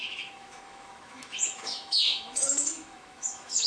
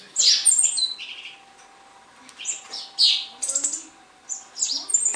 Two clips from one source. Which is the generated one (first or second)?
first